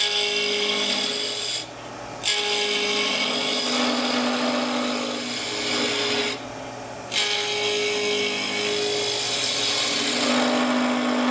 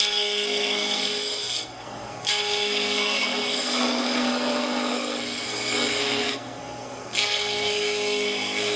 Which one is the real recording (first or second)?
first